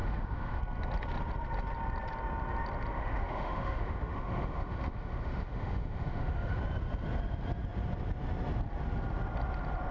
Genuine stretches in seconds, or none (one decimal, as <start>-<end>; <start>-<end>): 0.6-2.9; 6.6-9.9